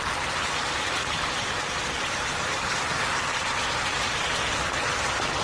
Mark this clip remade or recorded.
recorded